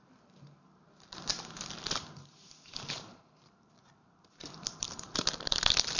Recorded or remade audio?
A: remade